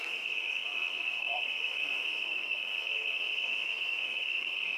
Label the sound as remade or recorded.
remade